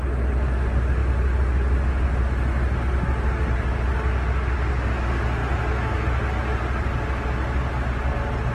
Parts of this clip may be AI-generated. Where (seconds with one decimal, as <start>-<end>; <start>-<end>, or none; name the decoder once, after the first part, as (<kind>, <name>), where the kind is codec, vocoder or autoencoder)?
none